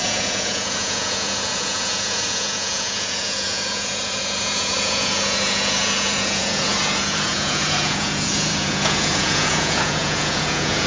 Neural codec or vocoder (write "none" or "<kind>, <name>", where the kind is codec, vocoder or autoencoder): vocoder, Vocos